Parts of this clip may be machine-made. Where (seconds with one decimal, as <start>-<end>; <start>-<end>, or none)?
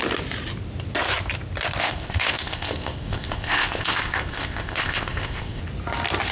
1.8-5.6